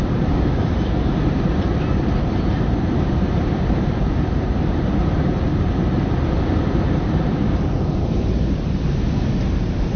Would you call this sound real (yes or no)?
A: no